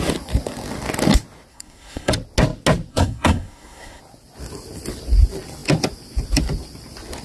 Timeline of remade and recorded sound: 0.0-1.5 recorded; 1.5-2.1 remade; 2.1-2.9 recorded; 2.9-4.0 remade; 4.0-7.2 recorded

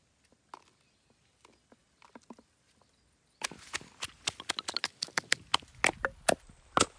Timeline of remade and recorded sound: 0.0-7.0 recorded

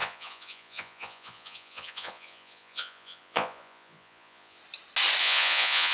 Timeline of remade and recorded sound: 0.0-4.6 remade; 4.6-5.2 recorded; 5.2-5.9 remade

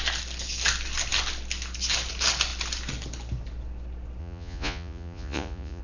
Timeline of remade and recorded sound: 0.0-4.2 recorded; 4.2-5.8 remade